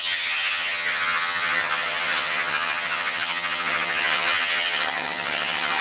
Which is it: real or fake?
fake